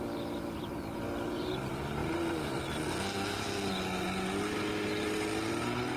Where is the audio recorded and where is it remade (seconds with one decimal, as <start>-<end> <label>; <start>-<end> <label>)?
0.0-6.0 recorded